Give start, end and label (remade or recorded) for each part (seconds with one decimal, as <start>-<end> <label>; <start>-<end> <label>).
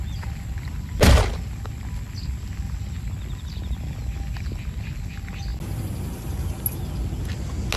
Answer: 0.0-7.8 recorded